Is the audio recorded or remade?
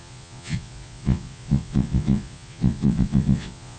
remade